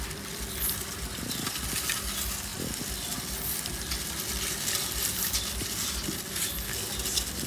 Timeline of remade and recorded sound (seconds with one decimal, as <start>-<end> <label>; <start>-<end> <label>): 0.0-7.5 recorded